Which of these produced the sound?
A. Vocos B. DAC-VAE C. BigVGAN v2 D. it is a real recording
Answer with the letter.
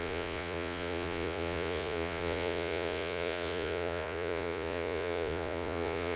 A